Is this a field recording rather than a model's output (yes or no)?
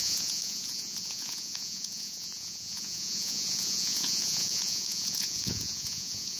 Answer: no